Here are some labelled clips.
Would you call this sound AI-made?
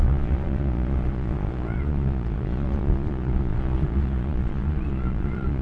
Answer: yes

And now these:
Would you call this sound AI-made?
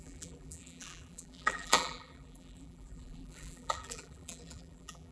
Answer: yes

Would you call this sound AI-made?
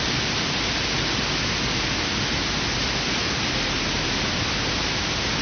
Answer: no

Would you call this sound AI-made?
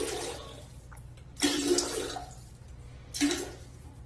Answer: no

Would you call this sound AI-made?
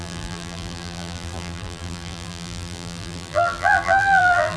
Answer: yes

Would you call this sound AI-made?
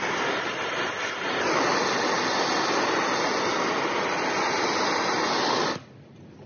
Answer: no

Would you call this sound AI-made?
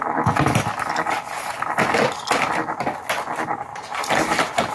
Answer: no